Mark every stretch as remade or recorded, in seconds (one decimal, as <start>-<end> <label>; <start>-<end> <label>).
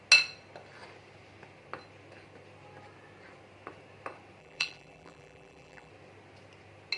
0.0-4.4 recorded; 4.4-5.9 remade; 5.9-7.0 recorded